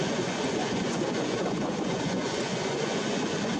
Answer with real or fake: fake